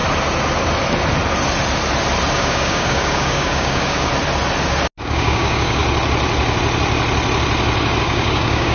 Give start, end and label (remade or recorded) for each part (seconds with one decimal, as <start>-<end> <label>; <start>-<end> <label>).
0.0-2.3 recorded; 2.3-4.1 remade; 4.1-5.0 recorded; 5.0-5.8 remade; 5.8-8.0 recorded; 8.0-8.7 remade